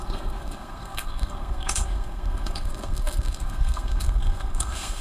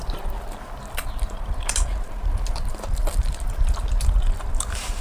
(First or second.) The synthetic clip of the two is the first